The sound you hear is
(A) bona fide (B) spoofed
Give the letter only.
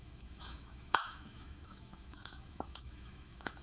B